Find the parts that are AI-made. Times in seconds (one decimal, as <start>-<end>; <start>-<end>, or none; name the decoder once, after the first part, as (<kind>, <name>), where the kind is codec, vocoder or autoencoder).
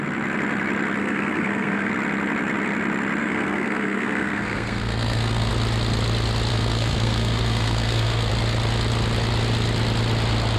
1.0-1.9 (codec, SNAC); 3.2-5.5; 6.5-8.3